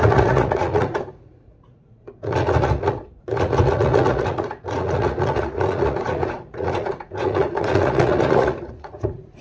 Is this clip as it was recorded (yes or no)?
no